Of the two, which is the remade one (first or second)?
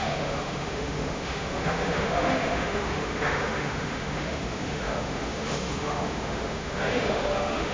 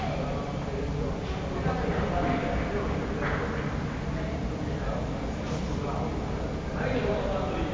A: first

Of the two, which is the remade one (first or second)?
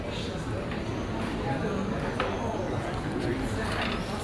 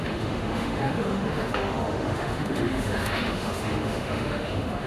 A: second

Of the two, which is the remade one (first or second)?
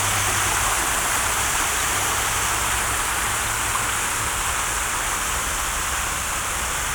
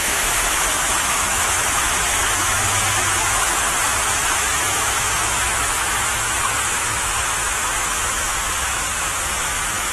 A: second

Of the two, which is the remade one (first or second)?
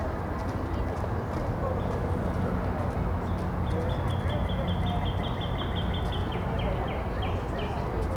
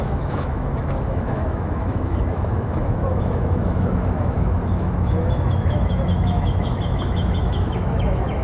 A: second